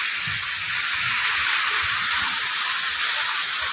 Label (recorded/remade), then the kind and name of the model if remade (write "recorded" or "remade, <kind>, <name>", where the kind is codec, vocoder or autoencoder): recorded